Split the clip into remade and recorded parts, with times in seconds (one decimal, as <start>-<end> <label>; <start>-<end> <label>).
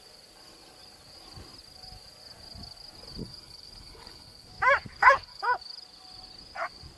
0.0-3.2 recorded; 3.2-4.5 remade; 4.5-5.0 recorded; 5.0-5.6 remade; 5.6-7.0 recorded